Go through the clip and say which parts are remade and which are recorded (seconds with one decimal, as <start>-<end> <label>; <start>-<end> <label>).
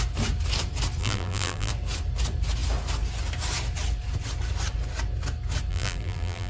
0.0-1.0 recorded; 1.0-1.7 remade; 1.7-5.7 recorded; 5.7-6.5 remade